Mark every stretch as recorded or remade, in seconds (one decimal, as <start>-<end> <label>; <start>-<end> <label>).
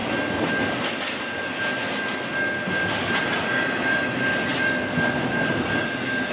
0.0-6.3 recorded